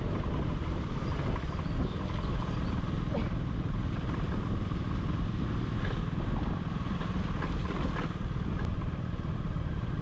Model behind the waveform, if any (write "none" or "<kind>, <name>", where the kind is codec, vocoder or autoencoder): none